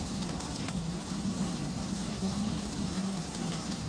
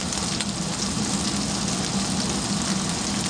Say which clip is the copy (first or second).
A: first